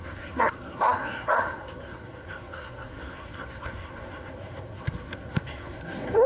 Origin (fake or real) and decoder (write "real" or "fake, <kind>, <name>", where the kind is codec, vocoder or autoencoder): fake, codec, SNAC